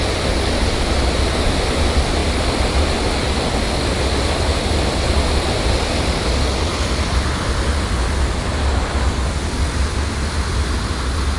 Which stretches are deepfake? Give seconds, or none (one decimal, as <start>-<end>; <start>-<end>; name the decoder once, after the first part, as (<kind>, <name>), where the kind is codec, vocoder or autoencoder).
4.5-5.1 (vocoder, BigVGAN v2)